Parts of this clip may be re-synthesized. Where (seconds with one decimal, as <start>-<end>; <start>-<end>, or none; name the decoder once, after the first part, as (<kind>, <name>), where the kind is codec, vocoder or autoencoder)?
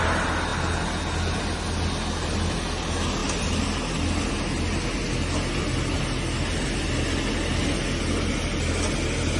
none